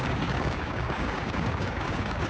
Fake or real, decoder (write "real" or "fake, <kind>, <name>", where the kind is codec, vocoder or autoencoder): fake, codec, DAC